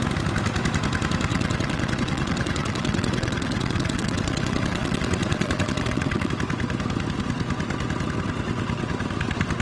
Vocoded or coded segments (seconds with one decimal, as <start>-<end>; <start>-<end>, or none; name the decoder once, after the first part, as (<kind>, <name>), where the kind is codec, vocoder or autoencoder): 1.3-6.3 (vocoder, WaveNeXt)